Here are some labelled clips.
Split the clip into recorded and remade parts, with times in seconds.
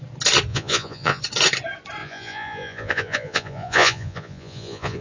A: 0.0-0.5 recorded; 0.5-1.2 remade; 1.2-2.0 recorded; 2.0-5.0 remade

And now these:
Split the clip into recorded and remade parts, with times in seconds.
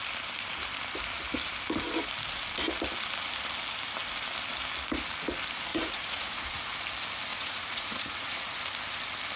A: 0.0-5.7 recorded; 5.7-6.6 remade; 6.6-7.3 recorded; 7.3-8.6 remade; 8.6-9.4 recorded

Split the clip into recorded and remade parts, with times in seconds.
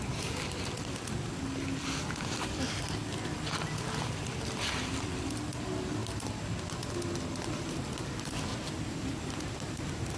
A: 0.0-8.5 recorded; 8.5-10.2 remade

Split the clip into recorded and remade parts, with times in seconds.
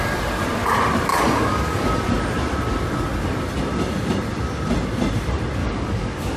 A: 0.0-1.1 recorded; 1.1-2.0 remade; 2.0-5.6 recorded; 5.6-6.4 remade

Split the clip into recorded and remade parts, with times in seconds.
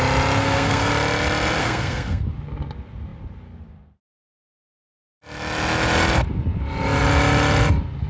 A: 0.0-0.4 recorded; 0.4-0.9 remade; 0.9-1.6 recorded; 1.6-2.3 remade; 2.3-8.1 recorded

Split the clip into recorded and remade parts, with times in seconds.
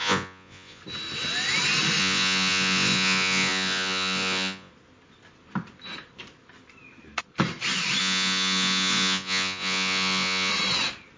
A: 0.0-0.8 remade; 0.8-2.0 recorded; 2.0-4.7 remade; 4.7-8.0 recorded; 8.0-10.5 remade; 10.5-11.2 recorded